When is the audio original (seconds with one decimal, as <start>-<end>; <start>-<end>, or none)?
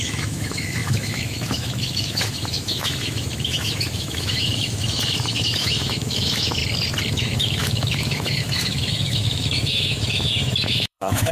6.6-7.1